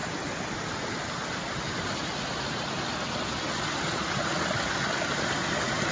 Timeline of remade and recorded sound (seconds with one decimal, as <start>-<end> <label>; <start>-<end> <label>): 0.0-5.9 recorded